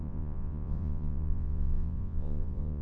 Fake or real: fake